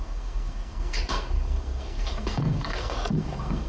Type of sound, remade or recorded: remade